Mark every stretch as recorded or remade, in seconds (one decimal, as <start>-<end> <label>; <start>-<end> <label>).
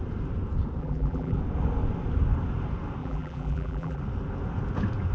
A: 0.0-0.8 recorded; 0.8-1.4 remade; 1.4-3.0 recorded; 3.0-4.0 remade; 4.0-5.1 recorded